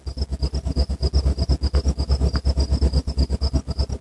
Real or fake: real